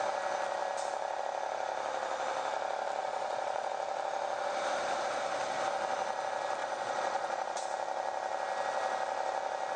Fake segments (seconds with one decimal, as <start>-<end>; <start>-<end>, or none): 3.0-3.7; 6.6-7.6